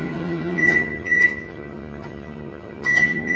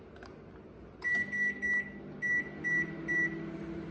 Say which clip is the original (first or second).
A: second